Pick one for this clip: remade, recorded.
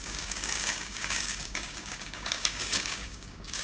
remade